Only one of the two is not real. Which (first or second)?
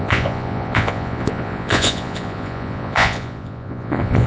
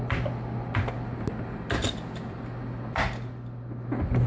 first